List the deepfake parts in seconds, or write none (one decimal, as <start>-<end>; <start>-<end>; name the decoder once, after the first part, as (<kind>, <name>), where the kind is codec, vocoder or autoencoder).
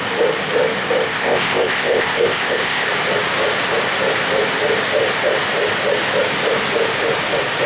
1.1-2.9 (codec, ZipCodec)